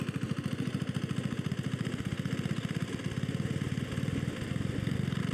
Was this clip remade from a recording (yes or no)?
no